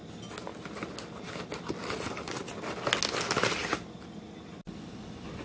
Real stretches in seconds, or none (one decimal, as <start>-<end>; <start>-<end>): 0.0-1.8; 2.4-5.4